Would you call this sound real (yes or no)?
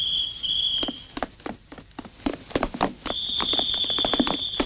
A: yes